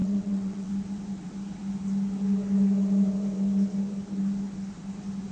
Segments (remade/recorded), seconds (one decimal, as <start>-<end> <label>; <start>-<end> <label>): 0.0-0.7 remade; 0.7-5.3 recorded